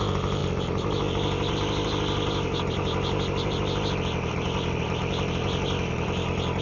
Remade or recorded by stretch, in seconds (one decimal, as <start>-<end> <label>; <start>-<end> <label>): 0.0-6.6 recorded